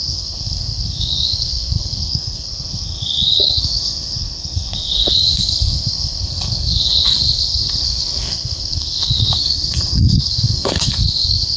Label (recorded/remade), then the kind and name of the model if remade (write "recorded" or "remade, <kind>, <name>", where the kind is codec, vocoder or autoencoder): remade, codec, SNAC